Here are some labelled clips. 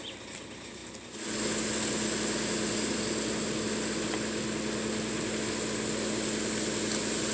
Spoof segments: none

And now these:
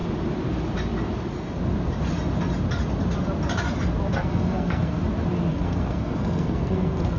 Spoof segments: 4.1-5.0; 5.5-7.2

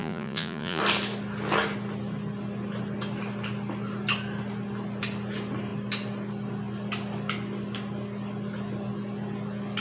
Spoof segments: 0.0-0.8

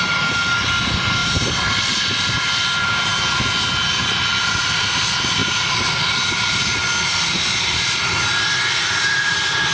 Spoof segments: none

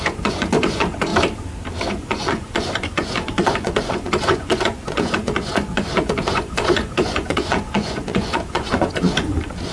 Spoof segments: 0.0-1.1; 1.9-9.7

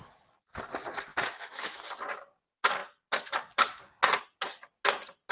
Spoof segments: 1.1-1.8